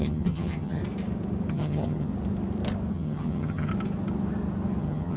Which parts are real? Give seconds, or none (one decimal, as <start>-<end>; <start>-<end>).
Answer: 0.8-1.5; 2.1-2.9; 3.7-4.8